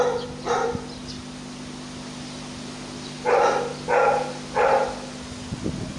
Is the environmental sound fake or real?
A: real